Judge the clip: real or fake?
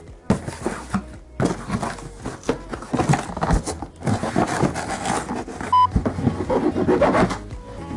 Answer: real